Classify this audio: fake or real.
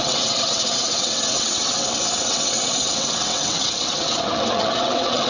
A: fake